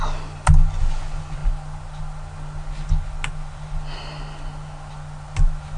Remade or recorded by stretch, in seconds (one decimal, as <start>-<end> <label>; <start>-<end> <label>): 0.0-5.8 recorded